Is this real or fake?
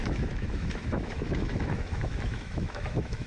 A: fake